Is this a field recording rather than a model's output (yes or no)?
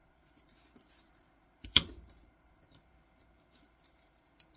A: no